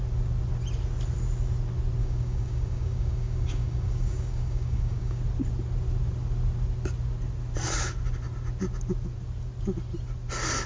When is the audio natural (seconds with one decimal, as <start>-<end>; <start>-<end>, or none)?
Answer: 0.0-2.0; 5.2-10.7